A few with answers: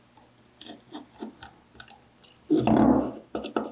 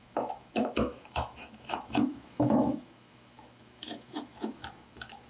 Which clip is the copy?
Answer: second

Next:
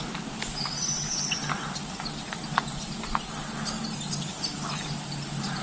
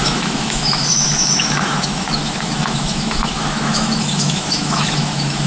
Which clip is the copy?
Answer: second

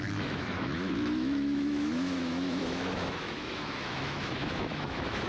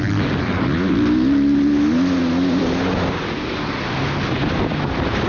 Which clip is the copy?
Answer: first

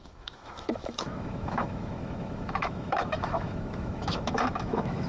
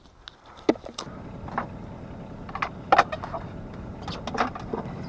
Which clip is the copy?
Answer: first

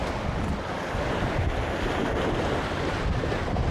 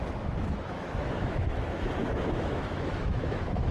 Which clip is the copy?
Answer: second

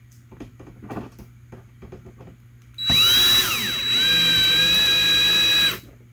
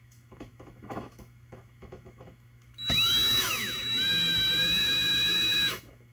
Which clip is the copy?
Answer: second